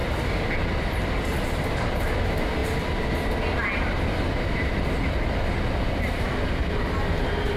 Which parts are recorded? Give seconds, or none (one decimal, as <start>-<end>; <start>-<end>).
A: 0.0-7.6